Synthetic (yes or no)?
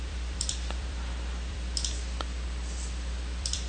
yes